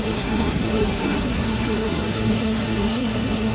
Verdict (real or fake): fake